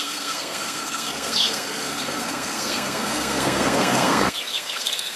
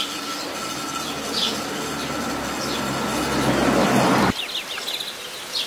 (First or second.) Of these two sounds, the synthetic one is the first